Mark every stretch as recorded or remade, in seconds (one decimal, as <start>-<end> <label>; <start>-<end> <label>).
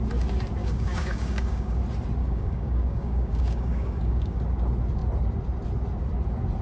0.0-0.6 recorded; 0.6-1.8 remade; 1.8-2.2 recorded; 2.2-4.4 remade; 4.4-6.6 recorded